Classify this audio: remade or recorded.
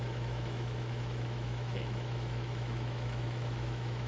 remade